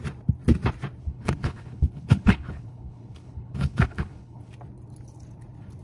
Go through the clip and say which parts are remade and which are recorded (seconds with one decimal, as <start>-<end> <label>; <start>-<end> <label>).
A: 0.0-1.0 recorded; 1.0-4.5 remade; 4.5-5.8 recorded